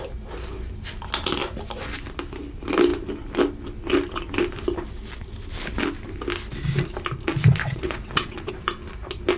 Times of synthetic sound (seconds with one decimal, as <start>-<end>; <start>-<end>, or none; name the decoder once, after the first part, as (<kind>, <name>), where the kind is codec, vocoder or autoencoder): 7.6-8.5 (vocoder, WaveNeXt)